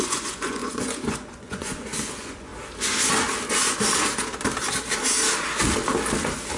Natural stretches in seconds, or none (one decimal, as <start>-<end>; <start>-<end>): 2.5-6.6